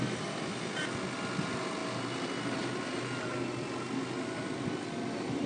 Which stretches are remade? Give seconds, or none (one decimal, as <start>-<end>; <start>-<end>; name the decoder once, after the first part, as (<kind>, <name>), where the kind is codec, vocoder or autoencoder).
none